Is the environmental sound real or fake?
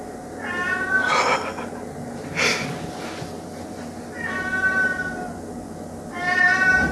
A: real